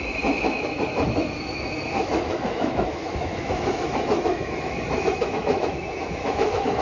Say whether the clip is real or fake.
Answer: fake